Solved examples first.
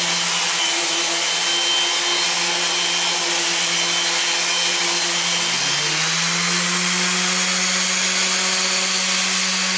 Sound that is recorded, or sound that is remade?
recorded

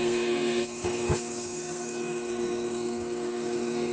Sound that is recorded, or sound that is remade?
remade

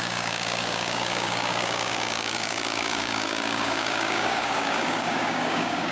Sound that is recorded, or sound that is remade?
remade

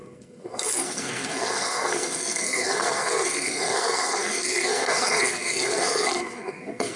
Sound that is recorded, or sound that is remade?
remade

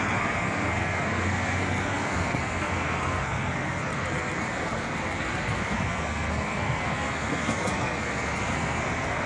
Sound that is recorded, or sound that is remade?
remade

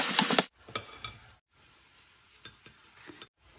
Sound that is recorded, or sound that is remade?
recorded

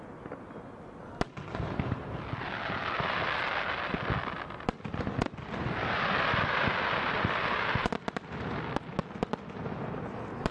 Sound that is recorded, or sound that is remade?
recorded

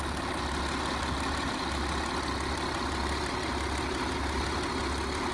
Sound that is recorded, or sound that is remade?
recorded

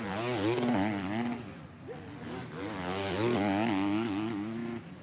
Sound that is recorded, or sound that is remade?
recorded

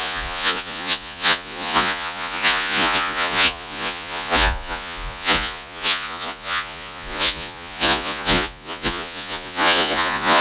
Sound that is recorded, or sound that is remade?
remade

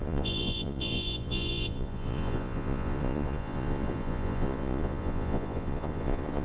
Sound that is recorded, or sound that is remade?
remade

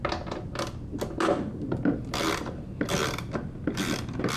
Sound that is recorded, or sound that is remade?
recorded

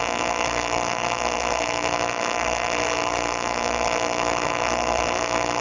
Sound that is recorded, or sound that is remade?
remade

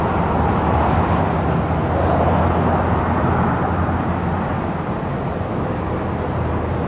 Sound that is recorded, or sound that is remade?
recorded